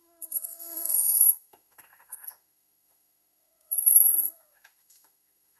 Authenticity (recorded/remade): remade